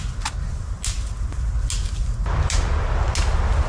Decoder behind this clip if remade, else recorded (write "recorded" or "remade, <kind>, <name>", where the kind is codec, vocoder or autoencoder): recorded